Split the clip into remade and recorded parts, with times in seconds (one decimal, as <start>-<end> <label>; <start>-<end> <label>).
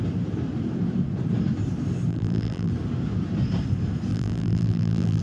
0.0-2.1 recorded; 2.1-2.7 remade; 2.7-4.1 recorded; 4.1-5.2 remade